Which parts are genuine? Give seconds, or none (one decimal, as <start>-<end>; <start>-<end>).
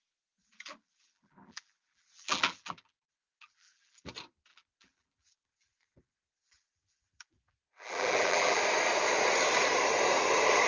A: 0.0-0.4; 4.1-4.5; 8.6-10.7